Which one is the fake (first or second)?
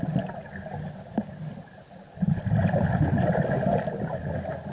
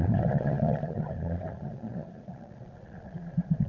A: second